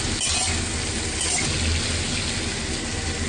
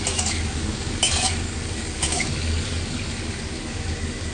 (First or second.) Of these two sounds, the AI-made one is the second